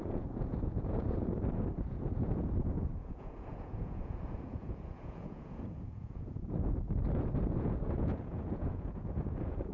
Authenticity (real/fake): fake